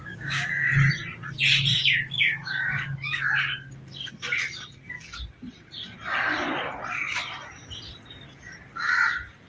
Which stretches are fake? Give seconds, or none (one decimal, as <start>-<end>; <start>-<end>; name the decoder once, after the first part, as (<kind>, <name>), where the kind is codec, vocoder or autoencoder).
0.0-0.7 (codec, DAC); 1.7-3.3